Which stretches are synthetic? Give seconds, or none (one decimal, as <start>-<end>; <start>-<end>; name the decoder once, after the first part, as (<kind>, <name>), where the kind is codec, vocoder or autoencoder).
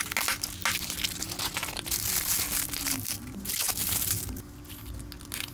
none